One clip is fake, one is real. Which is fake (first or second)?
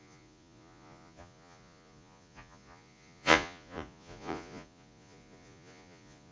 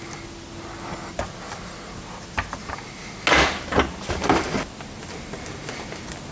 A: first